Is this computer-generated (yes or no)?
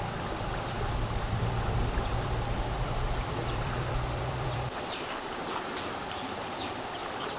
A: yes